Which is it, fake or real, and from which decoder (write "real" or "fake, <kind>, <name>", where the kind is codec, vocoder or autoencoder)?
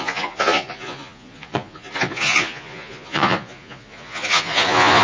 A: fake, vocoder, Vocos